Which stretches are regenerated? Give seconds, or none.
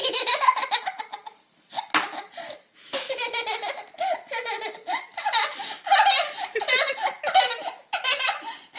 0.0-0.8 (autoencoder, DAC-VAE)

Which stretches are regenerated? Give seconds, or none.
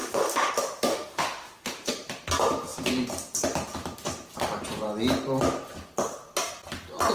0.0-0.5 (autoencoder, DAC-VAE); 0.9-1.9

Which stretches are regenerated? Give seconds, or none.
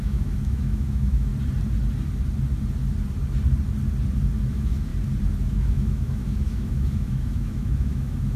0.0-1.3 (autoencoder, DAC-VAE); 4.5-4.9; 5.4-8.4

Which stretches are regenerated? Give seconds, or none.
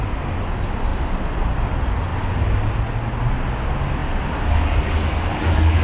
none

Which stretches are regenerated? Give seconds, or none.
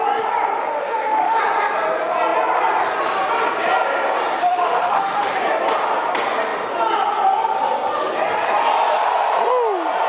0.6-1.4 (autoencoder, DAC-VAE); 4.4-5.3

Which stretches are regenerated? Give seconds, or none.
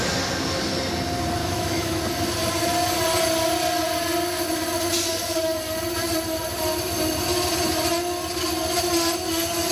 1.4-2.0 (autoencoder, DAC-VAE)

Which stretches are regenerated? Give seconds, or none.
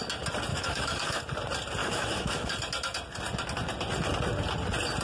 0.5-1.2 (autoencoder, DAC-VAE); 1.8-2.5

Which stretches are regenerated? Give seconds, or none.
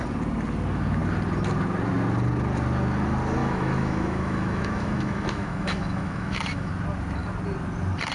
3.4-6.7 (autoencoder, DAC-VAE)